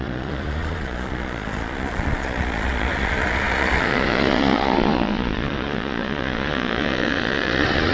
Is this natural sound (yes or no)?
no